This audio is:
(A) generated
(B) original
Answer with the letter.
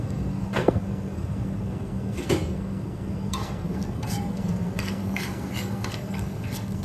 A